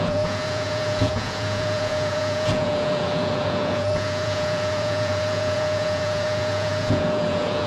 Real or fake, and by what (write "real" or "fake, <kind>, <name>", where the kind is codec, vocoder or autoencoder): fake, vocoder, Vocos